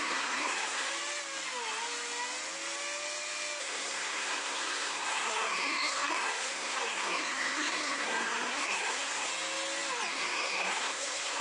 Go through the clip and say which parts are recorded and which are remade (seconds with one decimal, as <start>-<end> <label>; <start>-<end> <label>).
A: 0.0-0.9 remade; 0.9-3.6 recorded; 3.6-9.3 remade; 9.3-10.1 recorded; 10.1-11.4 remade